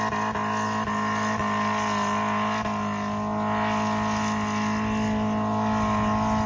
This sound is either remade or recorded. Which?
recorded